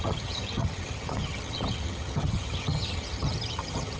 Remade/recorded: remade